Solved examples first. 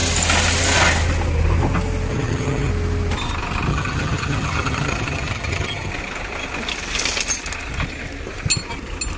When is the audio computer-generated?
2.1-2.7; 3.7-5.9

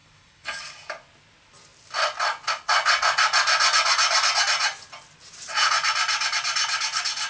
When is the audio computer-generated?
0.0-0.7

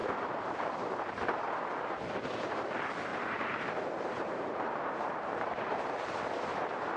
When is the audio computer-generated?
0.0-0.7; 3.1-6.0

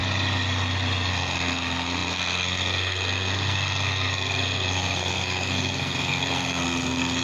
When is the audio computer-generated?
1.1-7.2

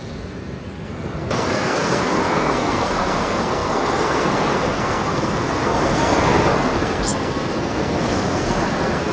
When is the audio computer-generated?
0.0-9.1

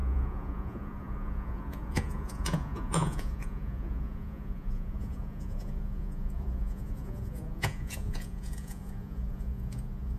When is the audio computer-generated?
0.0-10.2

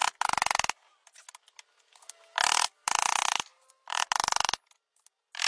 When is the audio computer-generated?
none

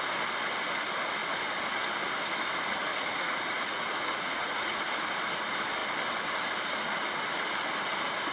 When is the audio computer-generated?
2.9-4.8